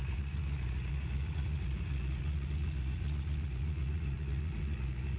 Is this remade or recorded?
remade